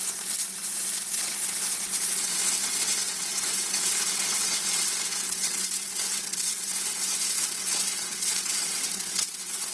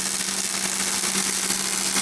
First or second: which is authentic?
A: second